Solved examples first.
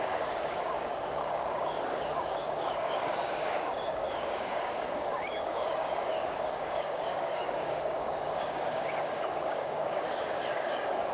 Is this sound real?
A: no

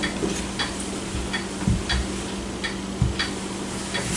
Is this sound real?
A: yes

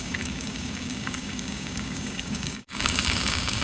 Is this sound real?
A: no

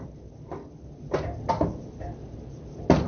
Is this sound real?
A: yes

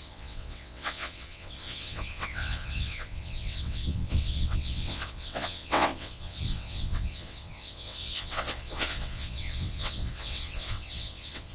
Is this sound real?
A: no